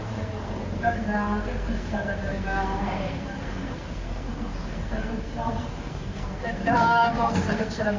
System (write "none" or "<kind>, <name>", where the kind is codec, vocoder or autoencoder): codec, SNAC